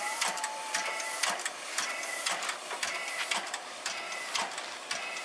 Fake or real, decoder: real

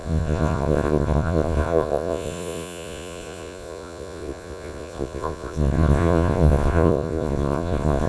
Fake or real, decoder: fake, vocoder, Vocos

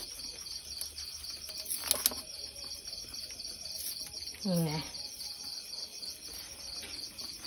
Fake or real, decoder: real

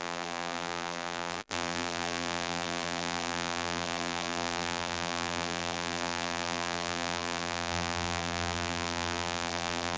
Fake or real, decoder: fake, vocoder, BigVGAN v2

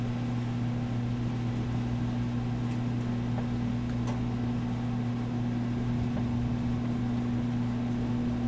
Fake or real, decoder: real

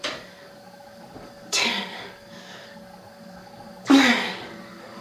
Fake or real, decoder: fake, codec, DAC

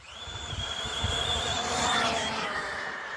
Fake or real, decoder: fake, vocoder, BigVGAN v2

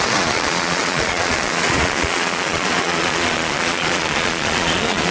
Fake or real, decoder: fake, vocoder, Vocos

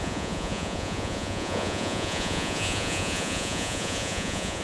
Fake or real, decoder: fake, vocoder, Vocos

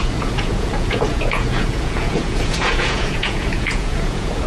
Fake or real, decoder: fake, vocoder, Vocos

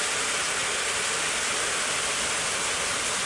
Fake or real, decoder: real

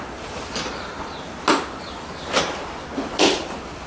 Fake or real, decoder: real